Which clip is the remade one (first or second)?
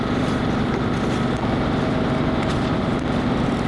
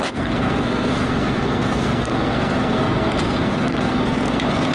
second